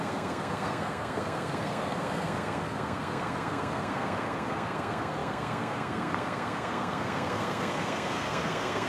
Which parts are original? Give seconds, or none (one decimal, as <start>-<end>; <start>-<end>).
none